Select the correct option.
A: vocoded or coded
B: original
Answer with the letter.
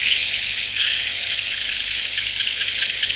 A